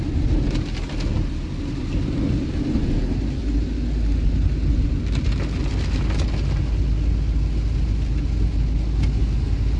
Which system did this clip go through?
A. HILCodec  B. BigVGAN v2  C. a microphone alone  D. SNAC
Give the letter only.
C